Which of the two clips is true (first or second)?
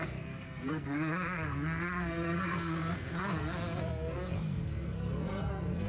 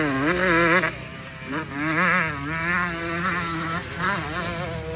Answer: second